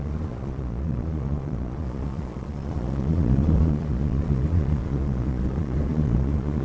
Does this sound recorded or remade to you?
remade